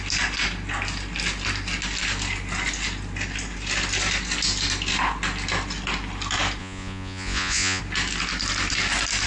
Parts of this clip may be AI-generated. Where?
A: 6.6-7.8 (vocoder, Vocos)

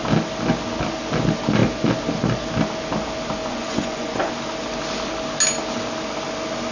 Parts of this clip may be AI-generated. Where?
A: 3.4-4.3 (vocoder, Vocos)

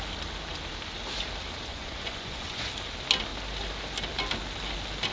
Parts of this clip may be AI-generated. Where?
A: 1.7-2.7 (vocoder, Vocos)

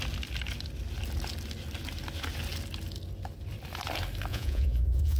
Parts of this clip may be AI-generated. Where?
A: 4.3-5.2 (vocoder, Vocos)

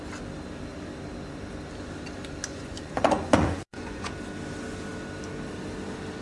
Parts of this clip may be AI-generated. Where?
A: 2.5-4.1 (vocoder, Vocos)

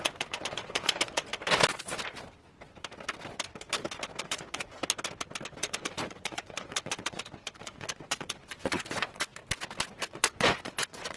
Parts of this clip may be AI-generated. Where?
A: 0.0-1.3 (vocoder, Vocos); 4.2-4.8; 5.6-9.3; 9.9-11.2